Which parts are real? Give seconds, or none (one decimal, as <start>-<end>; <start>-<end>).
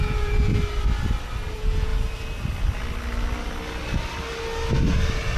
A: 0.5-1.5; 1.9-5.4